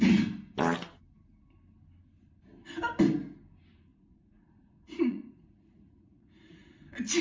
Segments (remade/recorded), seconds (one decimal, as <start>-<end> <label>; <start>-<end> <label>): 0.0-3.9 recorded; 3.9-6.8 remade; 6.8-7.2 recorded